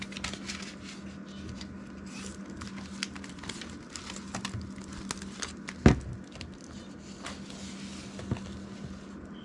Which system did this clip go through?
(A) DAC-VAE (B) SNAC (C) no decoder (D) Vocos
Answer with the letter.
C